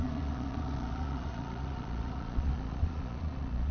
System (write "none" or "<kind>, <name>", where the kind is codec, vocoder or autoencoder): vocoder, Vocos